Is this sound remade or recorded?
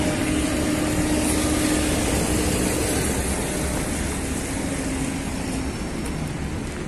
recorded